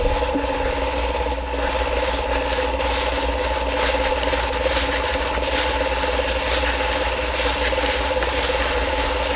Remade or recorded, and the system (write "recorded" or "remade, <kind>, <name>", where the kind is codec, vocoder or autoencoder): recorded